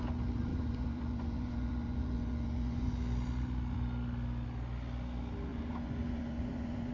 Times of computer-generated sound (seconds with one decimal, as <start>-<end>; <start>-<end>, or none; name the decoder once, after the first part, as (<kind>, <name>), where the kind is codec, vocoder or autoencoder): 0.5-2.9 (vocoder, Vocos); 5.5-6.9